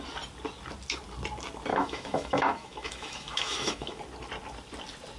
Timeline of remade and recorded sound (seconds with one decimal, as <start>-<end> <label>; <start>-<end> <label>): 0.0-1.7 recorded; 1.7-4.0 remade; 4.0-5.2 recorded

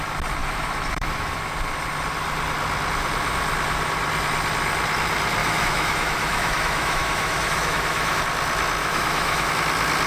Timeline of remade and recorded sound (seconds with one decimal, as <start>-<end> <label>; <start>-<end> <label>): 0.0-0.4 recorded; 0.4-1.4 remade; 1.4-5.4 recorded; 5.4-8.2 remade; 8.2-8.8 recorded; 8.8-9.5 remade; 9.5-10.1 recorded

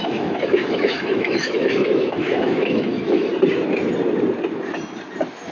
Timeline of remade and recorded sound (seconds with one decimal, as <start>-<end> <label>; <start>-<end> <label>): 0.0-3.3 remade; 3.3-5.5 recorded

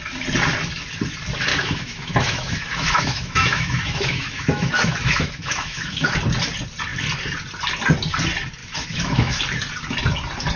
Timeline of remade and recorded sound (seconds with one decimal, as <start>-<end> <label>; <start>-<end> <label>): 0.0-1.5 recorded; 1.5-6.1 remade; 6.1-8.6 recorded; 8.6-9.4 remade; 9.4-10.6 recorded

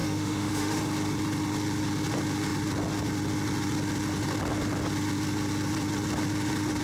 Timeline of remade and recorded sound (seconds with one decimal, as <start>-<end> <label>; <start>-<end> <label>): 0.0-0.8 remade; 0.8-6.8 recorded

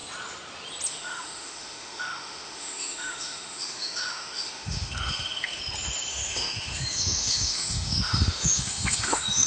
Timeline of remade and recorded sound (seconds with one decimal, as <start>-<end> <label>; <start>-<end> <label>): 0.0-0.9 recorded; 0.9-5.6 remade; 5.6-6.1 recorded; 6.1-9.5 remade

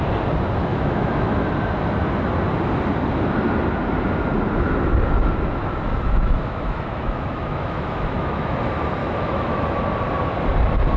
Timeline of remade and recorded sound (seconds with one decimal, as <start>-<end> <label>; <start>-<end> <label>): 0.0-0.7 recorded; 0.7-1.3 remade; 1.3-5.9 recorded; 5.9-8.6 remade; 8.6-9.0 recorded; 9.0-9.8 remade; 9.8-11.0 recorded